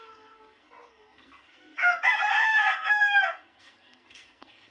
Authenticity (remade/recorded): remade